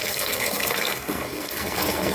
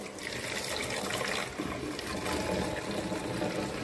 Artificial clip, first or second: first